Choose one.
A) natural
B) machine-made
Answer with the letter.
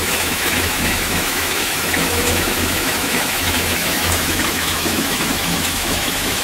B